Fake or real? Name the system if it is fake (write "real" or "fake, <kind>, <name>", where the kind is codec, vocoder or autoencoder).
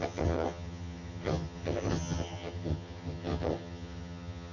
fake, vocoder, HiFi-GAN